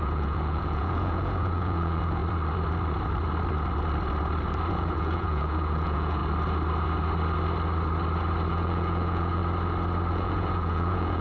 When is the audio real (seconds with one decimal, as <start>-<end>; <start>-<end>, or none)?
2.2-4.7; 6.2-8.5; 9.4-10.1